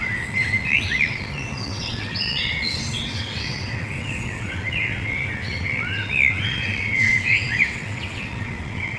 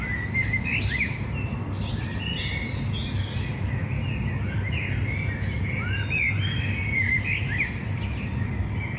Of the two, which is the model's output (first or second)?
first